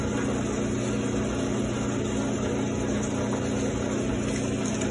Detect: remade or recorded recorded